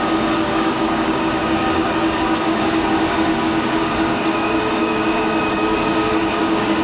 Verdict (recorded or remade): remade